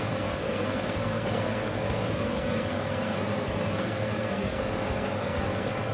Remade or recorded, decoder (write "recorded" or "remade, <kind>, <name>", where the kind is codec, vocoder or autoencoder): remade, codec, SNAC